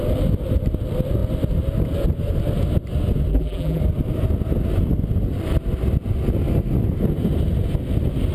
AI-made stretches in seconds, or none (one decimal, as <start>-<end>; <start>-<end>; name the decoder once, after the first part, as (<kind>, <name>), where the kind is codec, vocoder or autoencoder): 3.3-3.8 (vocoder, BigVGAN v2)